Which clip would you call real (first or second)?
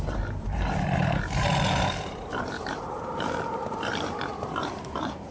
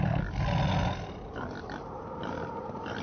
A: second